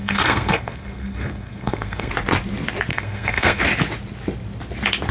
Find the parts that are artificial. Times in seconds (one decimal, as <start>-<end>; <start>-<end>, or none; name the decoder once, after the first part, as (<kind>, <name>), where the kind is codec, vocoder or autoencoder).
0.0-2.1 (codec, SNAC); 2.9-3.6